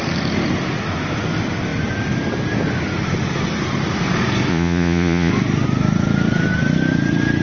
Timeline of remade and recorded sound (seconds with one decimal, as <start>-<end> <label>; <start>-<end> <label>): 0.0-4.5 recorded; 4.5-5.3 remade; 5.3-7.4 recorded